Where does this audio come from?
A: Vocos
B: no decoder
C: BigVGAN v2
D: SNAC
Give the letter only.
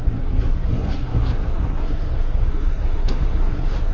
D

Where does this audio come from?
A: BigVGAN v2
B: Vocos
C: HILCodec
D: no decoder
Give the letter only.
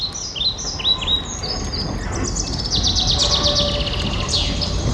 D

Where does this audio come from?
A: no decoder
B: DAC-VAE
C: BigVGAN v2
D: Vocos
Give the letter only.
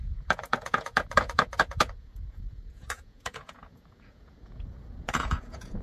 D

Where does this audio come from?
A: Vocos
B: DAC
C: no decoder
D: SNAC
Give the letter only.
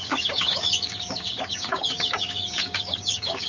B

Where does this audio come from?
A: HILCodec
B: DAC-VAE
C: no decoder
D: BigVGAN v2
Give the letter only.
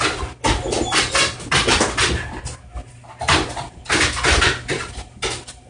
C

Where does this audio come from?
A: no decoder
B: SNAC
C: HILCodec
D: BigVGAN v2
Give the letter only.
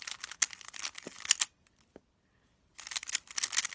A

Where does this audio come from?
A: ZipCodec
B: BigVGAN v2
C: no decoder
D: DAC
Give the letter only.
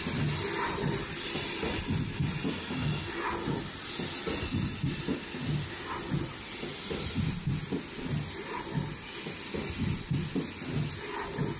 C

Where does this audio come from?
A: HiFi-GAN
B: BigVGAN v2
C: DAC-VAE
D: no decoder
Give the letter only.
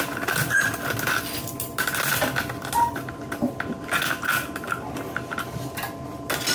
D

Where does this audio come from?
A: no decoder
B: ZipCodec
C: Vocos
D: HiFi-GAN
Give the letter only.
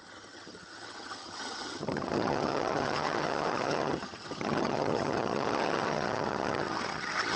D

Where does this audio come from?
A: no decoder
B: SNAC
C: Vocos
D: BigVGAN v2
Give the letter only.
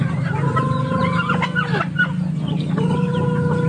A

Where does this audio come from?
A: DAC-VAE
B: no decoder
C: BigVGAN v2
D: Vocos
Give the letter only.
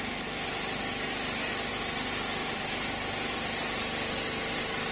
B